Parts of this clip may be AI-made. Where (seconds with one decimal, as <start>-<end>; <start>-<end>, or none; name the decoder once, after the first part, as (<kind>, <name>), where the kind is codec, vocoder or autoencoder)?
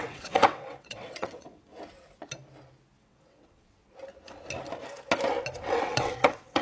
0.0-1.7 (vocoder, WaveNeXt); 3.0-3.8; 5.6-6.6